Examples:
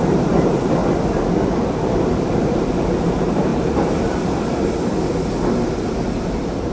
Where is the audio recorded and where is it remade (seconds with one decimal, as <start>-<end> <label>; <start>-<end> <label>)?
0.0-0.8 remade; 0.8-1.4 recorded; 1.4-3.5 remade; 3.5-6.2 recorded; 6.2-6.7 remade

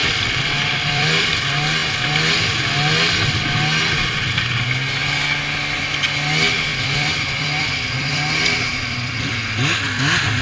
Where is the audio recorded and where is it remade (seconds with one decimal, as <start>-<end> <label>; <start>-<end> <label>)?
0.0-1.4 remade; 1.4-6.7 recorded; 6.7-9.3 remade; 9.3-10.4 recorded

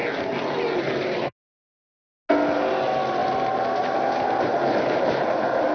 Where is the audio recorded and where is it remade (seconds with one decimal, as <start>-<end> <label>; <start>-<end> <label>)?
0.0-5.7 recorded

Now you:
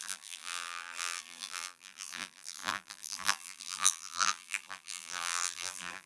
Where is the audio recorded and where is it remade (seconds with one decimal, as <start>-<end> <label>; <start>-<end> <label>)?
0.0-6.1 remade

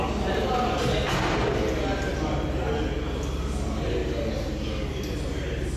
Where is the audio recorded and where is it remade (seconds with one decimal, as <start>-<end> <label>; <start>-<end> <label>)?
0.0-2.1 recorded; 2.1-2.8 remade; 2.8-5.8 recorded